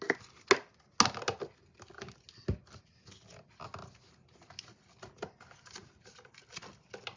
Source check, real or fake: real